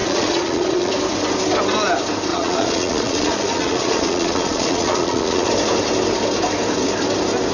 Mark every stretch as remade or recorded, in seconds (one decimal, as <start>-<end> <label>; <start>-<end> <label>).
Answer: 0.0-0.9 remade; 0.9-2.3 recorded; 2.3-5.5 remade; 5.5-7.5 recorded